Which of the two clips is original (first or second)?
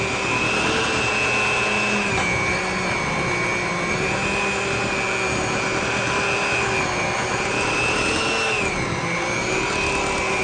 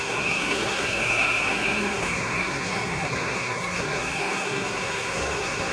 first